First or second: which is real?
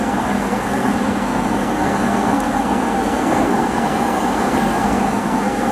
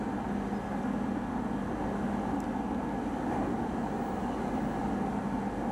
second